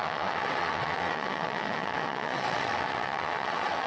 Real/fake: fake